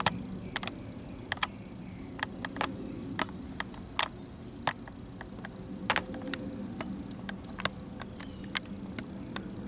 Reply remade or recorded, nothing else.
recorded